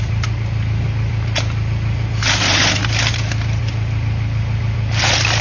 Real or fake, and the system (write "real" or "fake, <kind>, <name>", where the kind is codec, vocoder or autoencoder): real